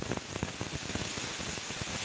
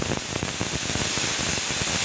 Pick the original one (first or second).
second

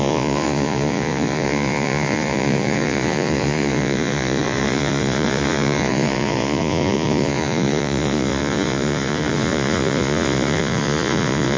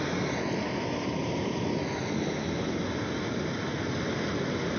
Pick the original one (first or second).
second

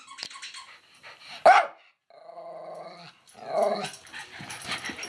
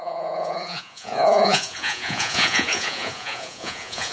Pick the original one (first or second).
first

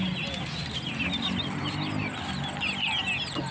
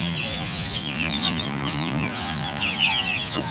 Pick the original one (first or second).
first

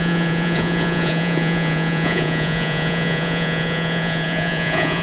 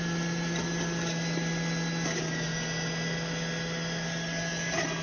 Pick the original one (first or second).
second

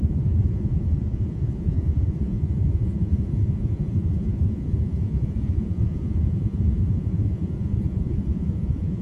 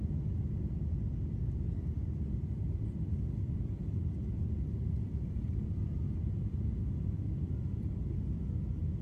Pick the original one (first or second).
second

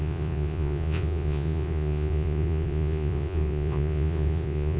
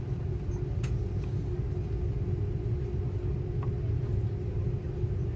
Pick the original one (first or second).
second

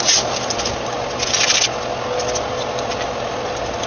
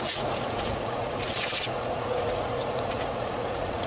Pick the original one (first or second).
first